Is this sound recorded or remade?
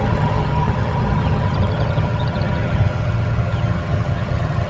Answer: remade